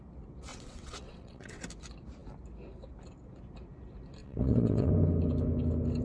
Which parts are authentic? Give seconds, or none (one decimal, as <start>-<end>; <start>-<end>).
0.0-0.5; 1.6-4.2; 4.9-6.0